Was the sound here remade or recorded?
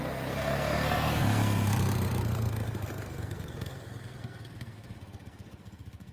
remade